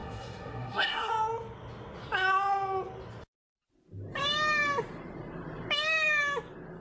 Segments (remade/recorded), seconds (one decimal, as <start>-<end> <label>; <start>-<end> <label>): 0.0-1.1 remade; 1.1-6.8 recorded